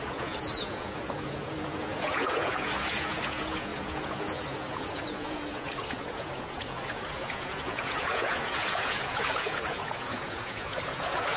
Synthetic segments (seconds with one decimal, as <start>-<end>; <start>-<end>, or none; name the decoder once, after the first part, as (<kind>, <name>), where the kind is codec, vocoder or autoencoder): 0.0-11.4 (vocoder, Vocos)